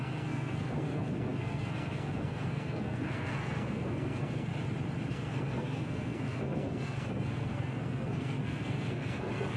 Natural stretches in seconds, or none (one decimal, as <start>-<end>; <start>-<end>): 4.5-5.1